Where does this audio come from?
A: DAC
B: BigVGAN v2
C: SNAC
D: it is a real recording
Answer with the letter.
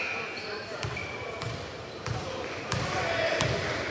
B